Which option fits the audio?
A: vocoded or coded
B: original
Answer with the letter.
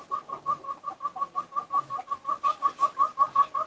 B